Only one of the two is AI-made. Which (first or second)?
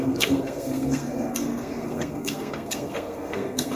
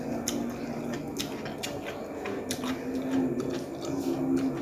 first